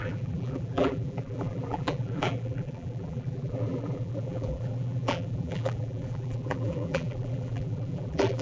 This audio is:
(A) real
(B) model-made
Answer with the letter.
B